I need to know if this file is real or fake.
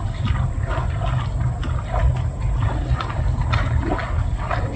real